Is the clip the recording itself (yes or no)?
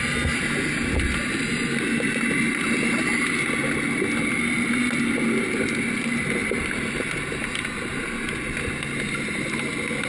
yes